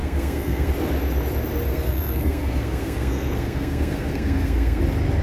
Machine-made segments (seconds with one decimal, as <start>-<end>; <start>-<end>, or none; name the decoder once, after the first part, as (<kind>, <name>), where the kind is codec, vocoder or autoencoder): 0.0-0.7 (codec, SNAC); 1.7-4.8